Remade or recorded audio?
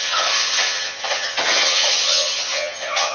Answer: remade